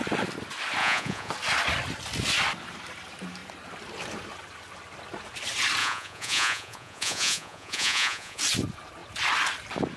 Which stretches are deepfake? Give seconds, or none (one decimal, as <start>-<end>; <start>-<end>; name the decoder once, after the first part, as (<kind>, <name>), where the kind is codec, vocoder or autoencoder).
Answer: 0.8-1.3 (vocoder, Vocos); 5.8-8.4